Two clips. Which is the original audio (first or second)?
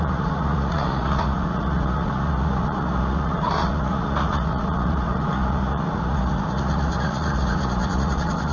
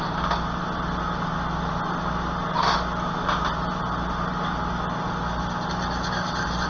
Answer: second